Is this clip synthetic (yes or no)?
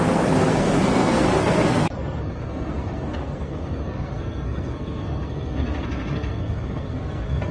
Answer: yes